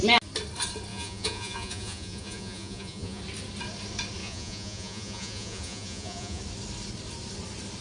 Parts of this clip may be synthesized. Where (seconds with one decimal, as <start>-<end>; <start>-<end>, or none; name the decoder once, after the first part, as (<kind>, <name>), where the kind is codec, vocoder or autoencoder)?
0.9-3.2 (vocoder, Vocos); 4.2-6.4